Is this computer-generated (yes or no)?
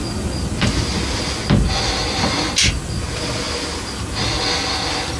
no